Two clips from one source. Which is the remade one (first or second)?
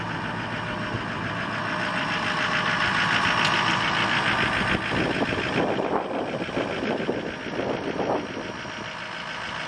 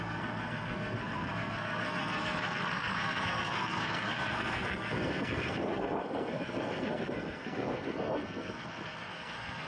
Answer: second